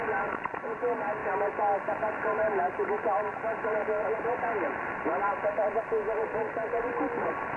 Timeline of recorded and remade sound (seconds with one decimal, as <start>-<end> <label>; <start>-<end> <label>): 0.0-7.6 recorded

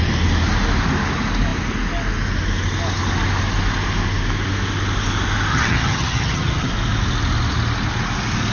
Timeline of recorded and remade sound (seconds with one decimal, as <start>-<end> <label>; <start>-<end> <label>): 0.0-5.5 recorded; 5.5-6.7 remade; 6.7-8.5 recorded

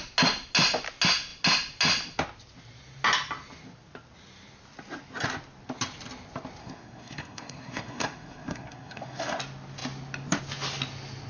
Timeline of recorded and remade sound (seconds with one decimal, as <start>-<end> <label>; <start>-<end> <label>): 0.0-6.6 recorded; 6.6-9.4 remade; 9.4-11.3 recorded

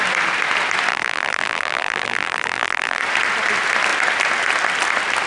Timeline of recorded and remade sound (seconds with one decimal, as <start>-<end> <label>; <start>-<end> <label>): 0.0-0.9 recorded; 0.9-3.0 remade; 3.0-5.3 recorded